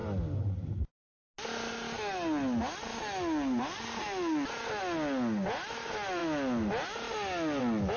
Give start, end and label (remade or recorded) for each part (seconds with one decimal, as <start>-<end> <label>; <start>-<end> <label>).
0.0-8.0 recorded